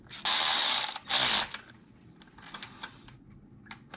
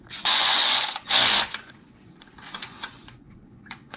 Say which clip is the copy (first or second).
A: second